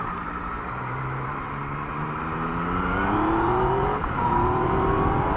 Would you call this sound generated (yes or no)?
yes